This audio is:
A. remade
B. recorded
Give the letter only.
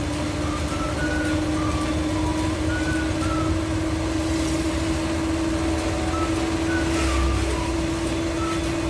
B